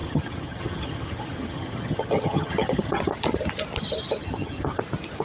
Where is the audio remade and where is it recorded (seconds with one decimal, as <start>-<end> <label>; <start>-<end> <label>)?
0.0-3.1 remade; 3.1-4.2 recorded; 4.2-4.8 remade; 4.8-5.2 recorded